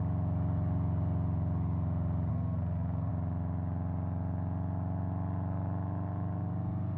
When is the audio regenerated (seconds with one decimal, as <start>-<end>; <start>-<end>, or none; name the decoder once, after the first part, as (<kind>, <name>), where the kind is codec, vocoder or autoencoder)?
2.3-3.1 (codec, SNAC)